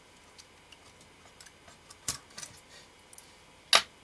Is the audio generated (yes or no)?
no